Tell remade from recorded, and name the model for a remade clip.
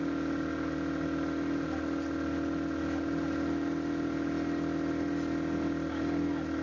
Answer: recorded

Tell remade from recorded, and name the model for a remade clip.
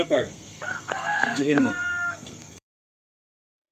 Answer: remade, codec, SNAC